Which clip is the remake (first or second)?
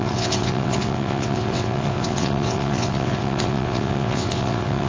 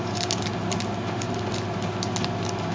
first